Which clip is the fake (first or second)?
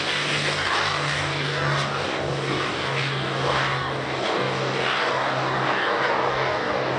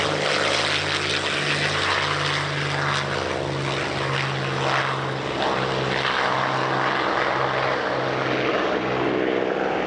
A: first